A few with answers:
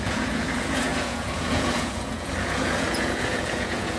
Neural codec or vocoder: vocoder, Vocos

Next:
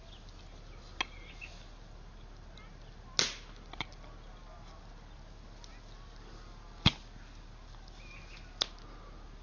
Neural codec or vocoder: none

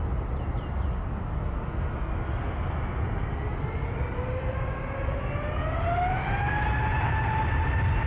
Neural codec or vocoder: none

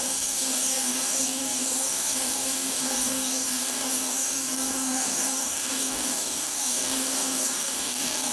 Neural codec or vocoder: codec, DAC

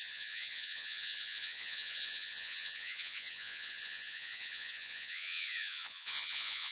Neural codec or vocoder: vocoder, Vocos